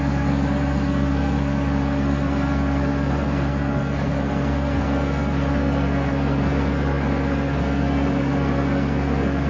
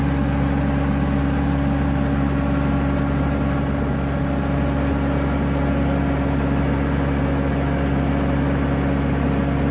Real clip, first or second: second